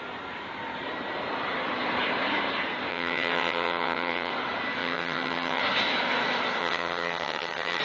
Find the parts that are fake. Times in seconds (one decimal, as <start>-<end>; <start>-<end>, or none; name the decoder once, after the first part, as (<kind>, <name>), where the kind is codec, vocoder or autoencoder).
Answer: 2.9-4.3 (vocoder, HiFi-GAN); 4.8-5.6; 6.6-7.8